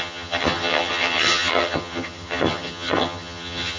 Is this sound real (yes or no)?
no